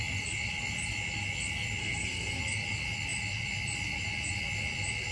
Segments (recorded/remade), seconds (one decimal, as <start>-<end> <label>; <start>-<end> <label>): 0.0-1.8 recorded; 1.8-2.4 remade; 2.4-5.1 recorded